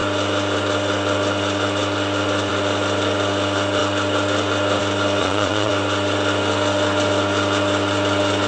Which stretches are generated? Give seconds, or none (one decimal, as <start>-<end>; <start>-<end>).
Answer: 5.2-5.7